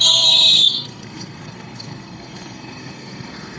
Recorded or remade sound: remade